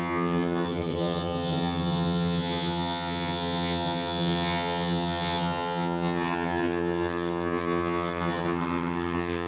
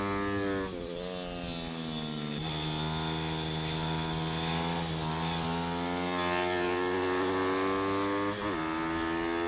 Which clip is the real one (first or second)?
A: second